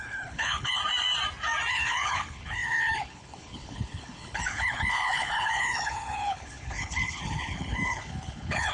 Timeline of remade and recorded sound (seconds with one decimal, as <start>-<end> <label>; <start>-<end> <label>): 0.0-0.8 remade; 0.8-1.7 recorded; 1.7-8.7 remade